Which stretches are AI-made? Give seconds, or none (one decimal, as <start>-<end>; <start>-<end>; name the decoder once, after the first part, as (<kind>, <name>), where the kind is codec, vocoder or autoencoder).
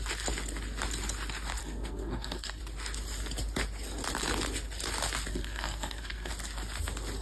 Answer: 1.6-2.6 (codec, SNAC); 5.3-6.3